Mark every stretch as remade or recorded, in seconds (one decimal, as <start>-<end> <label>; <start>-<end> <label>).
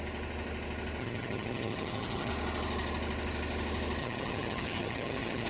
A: 0.0-1.0 recorded; 1.0-2.3 remade; 2.3-4.0 recorded; 4.0-5.5 remade